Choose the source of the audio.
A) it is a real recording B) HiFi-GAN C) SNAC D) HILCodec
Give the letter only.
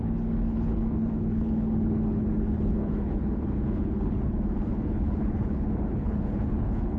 D